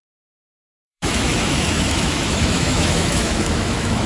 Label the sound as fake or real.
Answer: fake